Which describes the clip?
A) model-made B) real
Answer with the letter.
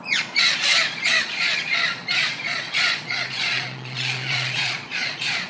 A